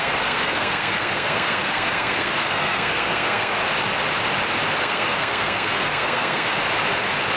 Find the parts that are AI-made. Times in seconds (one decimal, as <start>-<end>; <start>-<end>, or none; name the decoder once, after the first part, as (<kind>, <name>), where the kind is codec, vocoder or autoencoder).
0.0-3.6 (codec, SNAC); 4.8-6.5